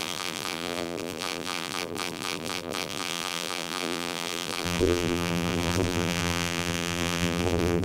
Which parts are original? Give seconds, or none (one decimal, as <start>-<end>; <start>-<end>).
none